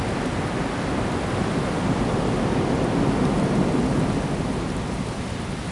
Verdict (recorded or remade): recorded